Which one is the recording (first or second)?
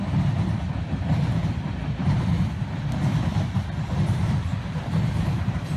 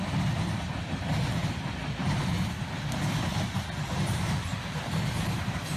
second